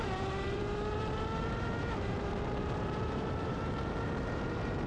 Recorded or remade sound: remade